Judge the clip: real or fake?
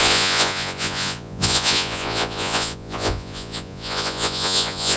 fake